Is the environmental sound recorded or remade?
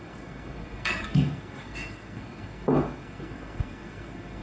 remade